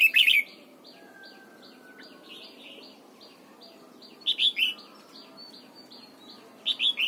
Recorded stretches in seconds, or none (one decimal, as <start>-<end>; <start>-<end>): 0.0-7.1